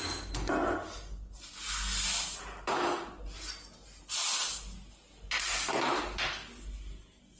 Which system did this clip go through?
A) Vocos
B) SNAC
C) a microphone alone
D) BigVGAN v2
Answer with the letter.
C